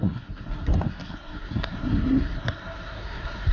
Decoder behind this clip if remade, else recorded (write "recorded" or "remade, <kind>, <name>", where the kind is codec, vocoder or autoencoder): remade, codec, SNAC